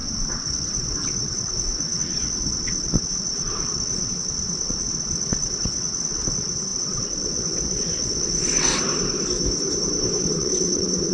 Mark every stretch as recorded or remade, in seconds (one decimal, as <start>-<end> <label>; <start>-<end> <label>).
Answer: 0.0-8.7 remade; 8.7-10.2 recorded; 10.2-11.1 remade